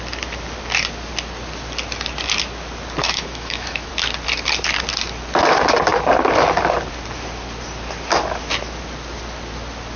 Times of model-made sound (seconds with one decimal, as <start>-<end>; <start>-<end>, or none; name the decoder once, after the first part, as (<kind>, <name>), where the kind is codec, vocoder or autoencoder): 3.0-3.9 (autoencoder, DAC-VAE)